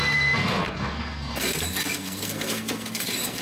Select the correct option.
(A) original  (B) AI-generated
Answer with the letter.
B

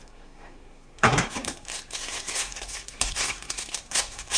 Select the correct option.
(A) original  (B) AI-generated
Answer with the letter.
B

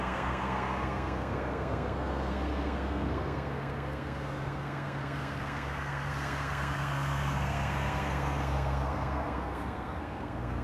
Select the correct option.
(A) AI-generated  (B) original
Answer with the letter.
A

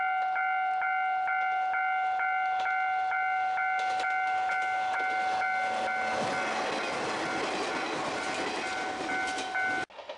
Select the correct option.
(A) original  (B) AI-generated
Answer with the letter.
A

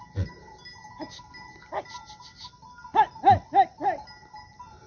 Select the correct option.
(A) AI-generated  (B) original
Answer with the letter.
B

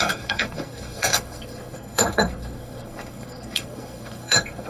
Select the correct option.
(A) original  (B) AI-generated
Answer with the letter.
B